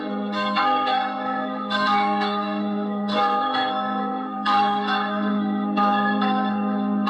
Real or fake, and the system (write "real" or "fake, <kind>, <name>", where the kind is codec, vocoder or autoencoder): fake, codec, SNAC